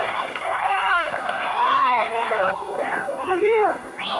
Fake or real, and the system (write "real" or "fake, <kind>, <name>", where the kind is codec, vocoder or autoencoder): fake, codec, SNAC